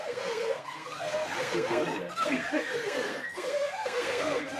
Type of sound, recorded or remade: remade